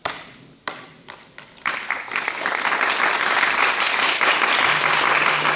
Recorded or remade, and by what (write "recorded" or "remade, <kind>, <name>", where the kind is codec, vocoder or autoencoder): recorded